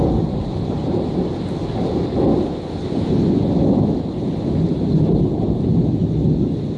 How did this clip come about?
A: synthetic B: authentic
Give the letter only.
B